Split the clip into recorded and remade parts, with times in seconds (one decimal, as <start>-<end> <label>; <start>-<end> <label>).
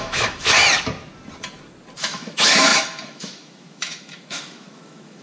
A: 0.0-0.6 remade; 0.6-2.0 recorded; 2.0-5.2 remade